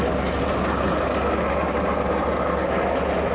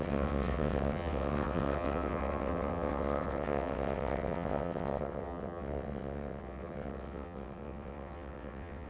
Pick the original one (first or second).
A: first